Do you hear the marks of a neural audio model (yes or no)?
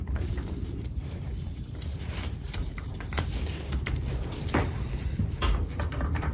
yes